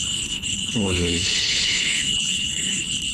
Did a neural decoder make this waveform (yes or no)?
yes